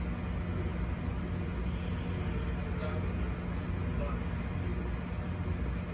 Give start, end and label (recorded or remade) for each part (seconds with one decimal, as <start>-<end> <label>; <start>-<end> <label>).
0.0-5.9 recorded